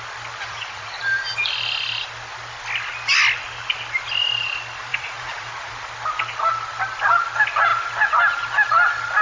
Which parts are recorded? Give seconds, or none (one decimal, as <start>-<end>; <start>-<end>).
0.0-0.5; 1.0-4.9; 5.7-9.2